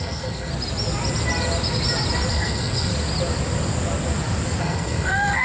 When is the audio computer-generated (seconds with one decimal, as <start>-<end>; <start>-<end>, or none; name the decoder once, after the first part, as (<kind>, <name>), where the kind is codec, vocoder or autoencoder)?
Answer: 0.0-0.5 (codec, SNAC); 2.3-2.9; 4.6-5.4